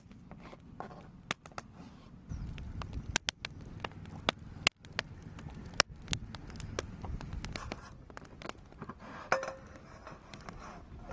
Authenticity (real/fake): real